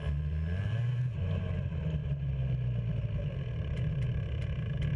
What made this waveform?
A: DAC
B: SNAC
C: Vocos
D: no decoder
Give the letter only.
D